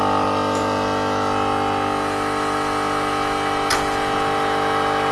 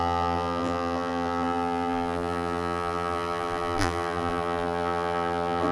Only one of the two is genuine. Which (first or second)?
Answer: first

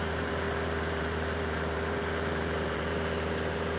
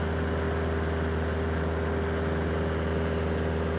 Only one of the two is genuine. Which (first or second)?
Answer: second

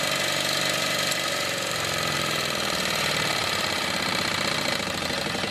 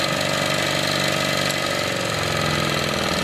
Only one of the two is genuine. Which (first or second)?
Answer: second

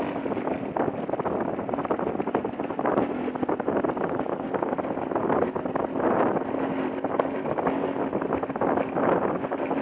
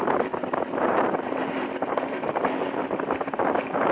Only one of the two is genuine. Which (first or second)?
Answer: first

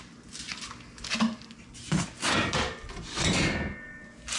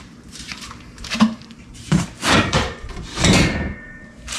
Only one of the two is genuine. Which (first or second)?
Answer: first